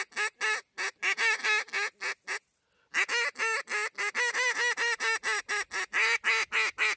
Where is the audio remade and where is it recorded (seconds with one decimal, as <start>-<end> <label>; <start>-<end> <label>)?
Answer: 0.0-7.0 recorded